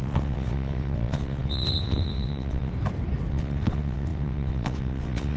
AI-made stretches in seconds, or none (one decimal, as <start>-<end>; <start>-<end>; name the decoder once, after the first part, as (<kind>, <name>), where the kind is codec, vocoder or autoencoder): 0.0-2.7 (vocoder, WaveNeXt); 3.3-5.4